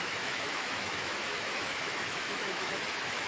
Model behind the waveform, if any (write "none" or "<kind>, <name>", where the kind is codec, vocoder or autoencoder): autoencoder, DAC-VAE